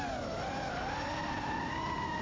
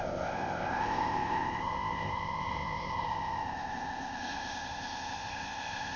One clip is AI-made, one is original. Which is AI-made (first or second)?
second